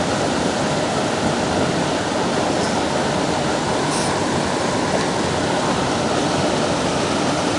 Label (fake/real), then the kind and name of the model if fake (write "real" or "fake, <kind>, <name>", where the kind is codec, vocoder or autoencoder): real